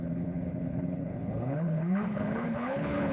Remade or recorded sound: remade